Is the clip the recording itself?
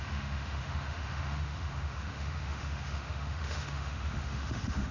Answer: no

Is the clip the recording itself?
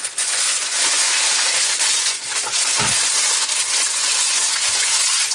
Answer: no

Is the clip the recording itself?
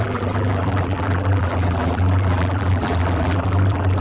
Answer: no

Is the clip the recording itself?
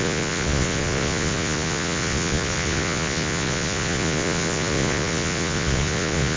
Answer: no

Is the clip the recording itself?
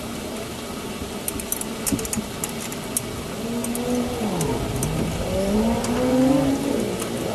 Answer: yes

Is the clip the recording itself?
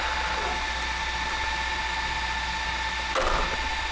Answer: yes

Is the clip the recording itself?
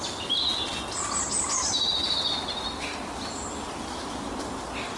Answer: yes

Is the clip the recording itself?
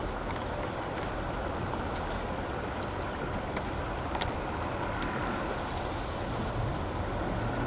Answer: yes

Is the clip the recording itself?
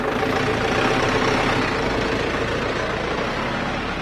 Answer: yes